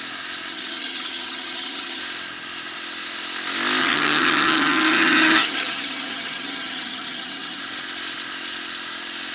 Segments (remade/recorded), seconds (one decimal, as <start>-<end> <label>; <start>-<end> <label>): 0.0-0.5 recorded; 0.5-2.0 remade; 2.0-3.8 recorded; 3.8-7.6 remade; 7.6-9.3 recorded